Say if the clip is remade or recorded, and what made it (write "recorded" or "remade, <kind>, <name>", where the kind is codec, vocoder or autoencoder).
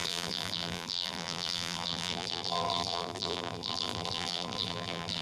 remade, vocoder, BigVGAN v2